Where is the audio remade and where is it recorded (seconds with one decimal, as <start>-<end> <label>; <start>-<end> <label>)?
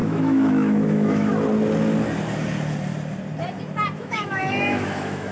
0.0-1.3 remade; 1.3-4.0 recorded; 4.0-5.3 remade